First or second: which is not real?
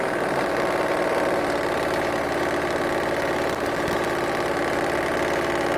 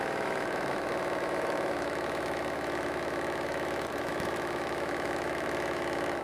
second